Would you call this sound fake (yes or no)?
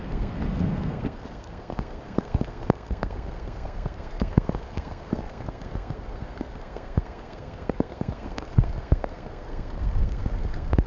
yes